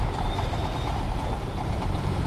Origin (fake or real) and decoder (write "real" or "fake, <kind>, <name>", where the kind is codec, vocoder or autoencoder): fake, vocoder, BigVGAN v2